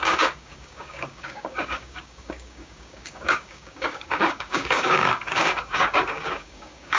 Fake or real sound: fake